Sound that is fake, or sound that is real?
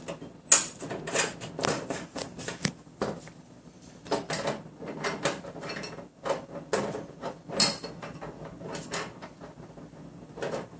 real